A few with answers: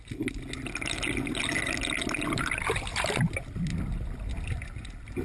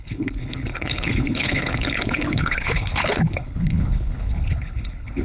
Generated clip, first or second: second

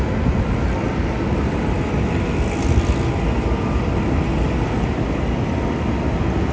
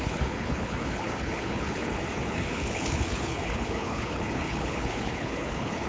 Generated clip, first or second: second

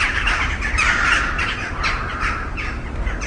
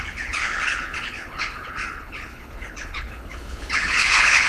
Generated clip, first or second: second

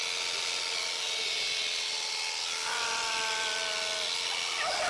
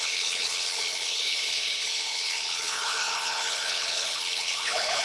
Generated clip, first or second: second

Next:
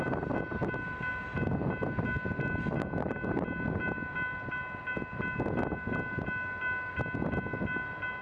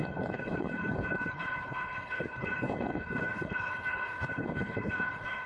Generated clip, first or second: second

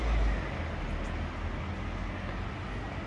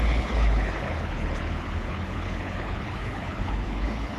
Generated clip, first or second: second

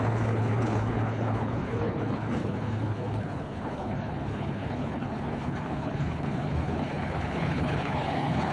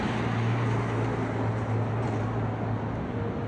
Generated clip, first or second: first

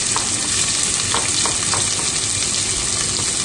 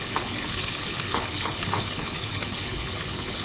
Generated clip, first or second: second